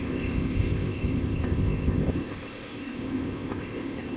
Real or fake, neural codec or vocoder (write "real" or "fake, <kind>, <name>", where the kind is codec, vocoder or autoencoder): fake, codec, ZipCodec